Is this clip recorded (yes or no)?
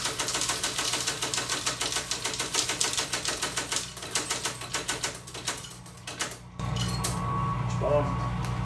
yes